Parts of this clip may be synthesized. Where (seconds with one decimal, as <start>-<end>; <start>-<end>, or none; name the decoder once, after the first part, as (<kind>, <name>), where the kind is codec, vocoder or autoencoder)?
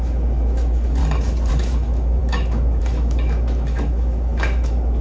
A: 0.0-1.0 (autoencoder, DAC-VAE); 1.5-5.0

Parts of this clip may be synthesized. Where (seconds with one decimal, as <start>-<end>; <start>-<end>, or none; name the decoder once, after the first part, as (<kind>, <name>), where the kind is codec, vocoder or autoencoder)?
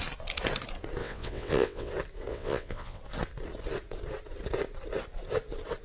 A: 1.0-1.9 (vocoder, WaveNeXt); 2.3-3.0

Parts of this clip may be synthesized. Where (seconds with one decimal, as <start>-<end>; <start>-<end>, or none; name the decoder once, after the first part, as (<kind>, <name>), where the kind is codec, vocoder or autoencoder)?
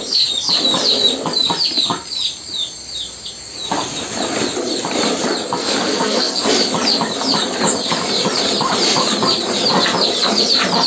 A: 5.6-6.5 (codec, SNAC)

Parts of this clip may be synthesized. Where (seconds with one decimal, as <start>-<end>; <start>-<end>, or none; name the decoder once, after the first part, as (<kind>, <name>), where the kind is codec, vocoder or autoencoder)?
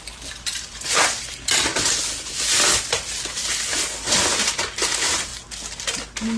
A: 0.0-1.7 (vocoder, BigVGAN v2); 2.3-5.3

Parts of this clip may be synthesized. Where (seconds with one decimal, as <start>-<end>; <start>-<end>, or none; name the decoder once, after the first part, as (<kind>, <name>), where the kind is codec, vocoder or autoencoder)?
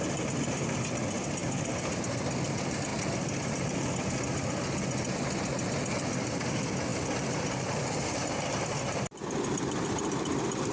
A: 0.0-2.9 (vocoder, BigVGAN v2); 6.4-10.7